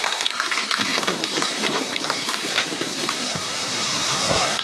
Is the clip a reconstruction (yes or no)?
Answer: yes